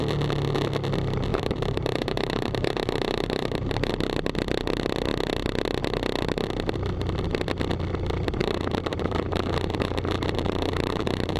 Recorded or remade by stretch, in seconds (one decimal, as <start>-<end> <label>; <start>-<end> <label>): 0.0-1.3 recorded; 1.3-3.9 remade; 3.9-8.4 recorded; 8.4-11.4 remade